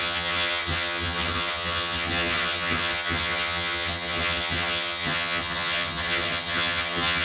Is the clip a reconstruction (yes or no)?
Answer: yes